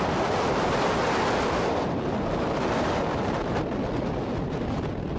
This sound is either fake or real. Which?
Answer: real